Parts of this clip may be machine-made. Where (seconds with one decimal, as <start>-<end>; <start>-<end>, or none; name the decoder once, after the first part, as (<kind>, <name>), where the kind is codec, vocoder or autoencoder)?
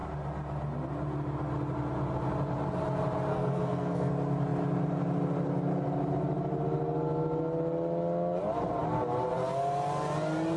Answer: 3.3-4.1 (codec, SNAC)